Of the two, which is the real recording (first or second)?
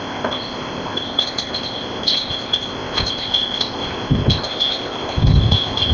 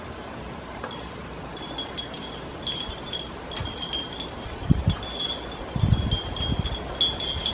second